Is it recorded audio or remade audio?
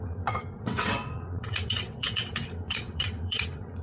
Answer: remade